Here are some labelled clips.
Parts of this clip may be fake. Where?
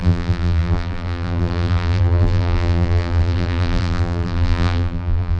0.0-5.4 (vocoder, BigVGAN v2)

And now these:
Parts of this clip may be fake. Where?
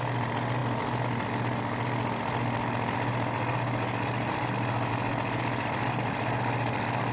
none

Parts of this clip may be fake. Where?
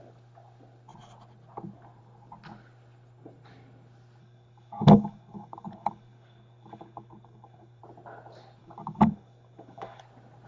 4.2-7.8 (codec, DAC); 8.6-10.0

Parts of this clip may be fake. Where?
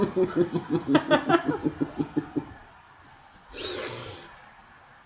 none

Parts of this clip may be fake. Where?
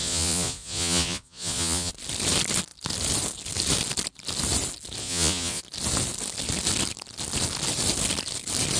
0.0-1.9 (vocoder, Vocos); 5.0-5.6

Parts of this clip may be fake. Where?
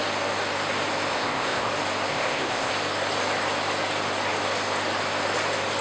1.1-1.7 (codec, ZipCodec); 2.1-2.7